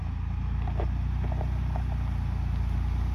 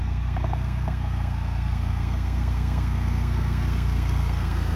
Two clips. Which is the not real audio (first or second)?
second